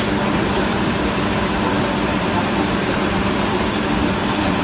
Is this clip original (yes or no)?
no